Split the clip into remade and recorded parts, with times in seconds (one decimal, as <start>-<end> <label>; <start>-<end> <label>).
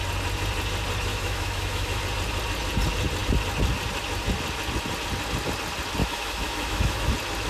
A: 0.0-1.1 recorded; 1.1-2.0 remade; 2.0-6.0 recorded; 6.0-7.1 remade; 7.1-7.5 recorded